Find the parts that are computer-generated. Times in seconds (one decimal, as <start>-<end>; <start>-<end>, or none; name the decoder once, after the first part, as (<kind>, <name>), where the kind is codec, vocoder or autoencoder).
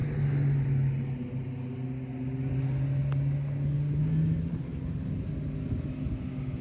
4.5-5.1 (codec, HILCodec)